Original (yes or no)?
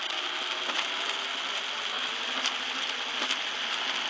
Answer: yes